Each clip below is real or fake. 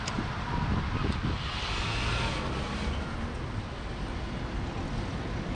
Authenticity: real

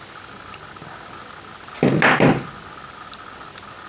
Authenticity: real